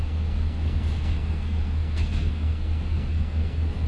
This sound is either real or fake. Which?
fake